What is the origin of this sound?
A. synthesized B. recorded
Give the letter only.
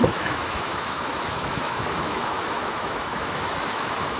A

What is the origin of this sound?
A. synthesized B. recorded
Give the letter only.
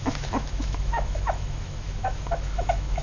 A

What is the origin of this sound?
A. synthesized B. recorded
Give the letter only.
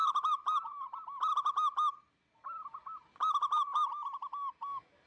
B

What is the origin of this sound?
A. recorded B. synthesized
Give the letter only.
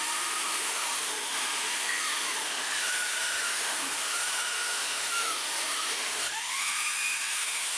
B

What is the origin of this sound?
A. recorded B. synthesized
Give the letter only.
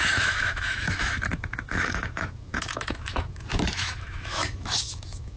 B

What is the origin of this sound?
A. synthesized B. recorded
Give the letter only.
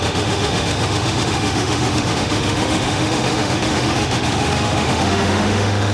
A